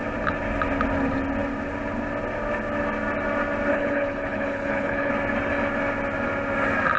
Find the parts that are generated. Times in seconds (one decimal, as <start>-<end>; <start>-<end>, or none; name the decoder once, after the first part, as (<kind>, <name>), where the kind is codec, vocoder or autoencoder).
3.7-5.1 (codec, HILCodec)

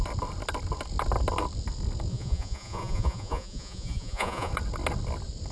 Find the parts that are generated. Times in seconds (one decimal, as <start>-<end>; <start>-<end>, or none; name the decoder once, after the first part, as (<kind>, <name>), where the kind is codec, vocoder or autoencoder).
2.1-4.5 (vocoder, Vocos)

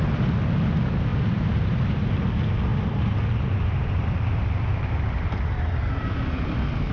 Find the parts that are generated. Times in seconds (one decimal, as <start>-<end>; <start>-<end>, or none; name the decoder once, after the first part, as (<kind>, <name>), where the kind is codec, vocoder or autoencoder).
1.1-2.3 (vocoder, BigVGAN v2); 2.7-5.3

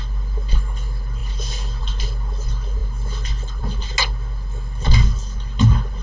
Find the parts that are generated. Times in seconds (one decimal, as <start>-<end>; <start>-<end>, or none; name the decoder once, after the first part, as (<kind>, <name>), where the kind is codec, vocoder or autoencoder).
none

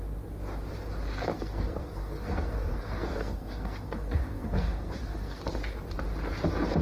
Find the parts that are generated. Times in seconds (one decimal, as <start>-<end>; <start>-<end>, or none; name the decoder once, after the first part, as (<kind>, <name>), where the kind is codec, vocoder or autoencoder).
1.3-5.4 (codec, SNAC)

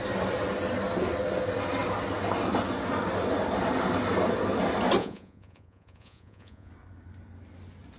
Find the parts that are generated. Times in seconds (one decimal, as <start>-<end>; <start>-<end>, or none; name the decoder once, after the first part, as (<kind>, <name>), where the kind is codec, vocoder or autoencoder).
5.0-6.7 (vocoder, Vocos)

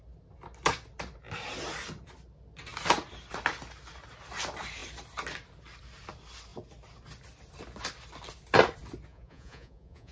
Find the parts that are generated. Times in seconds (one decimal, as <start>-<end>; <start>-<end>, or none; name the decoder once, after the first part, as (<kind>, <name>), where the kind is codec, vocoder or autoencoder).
9.1-10.1 (vocoder, Vocos)

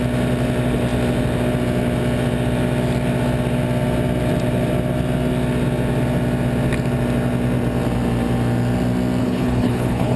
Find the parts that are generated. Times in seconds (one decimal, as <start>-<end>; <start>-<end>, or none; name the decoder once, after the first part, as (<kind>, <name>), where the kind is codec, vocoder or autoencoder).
9.2-10.2 (codec, HILCodec)